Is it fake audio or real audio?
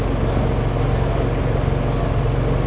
real